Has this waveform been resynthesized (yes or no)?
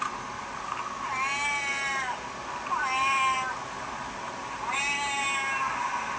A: no